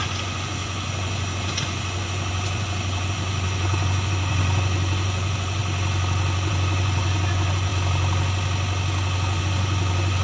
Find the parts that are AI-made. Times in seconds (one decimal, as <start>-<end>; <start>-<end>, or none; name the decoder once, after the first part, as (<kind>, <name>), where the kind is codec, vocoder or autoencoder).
0.0-5.6 (vocoder, Vocos); 6.5-7.7; 9.4-10.2